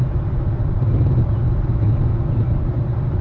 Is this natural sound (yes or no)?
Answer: yes